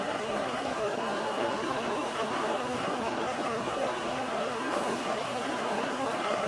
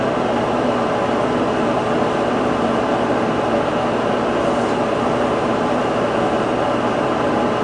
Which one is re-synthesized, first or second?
first